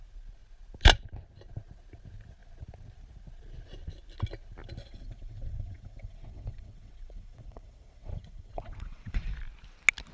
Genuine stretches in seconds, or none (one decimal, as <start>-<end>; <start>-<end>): 0.0-4.8; 9.2-10.1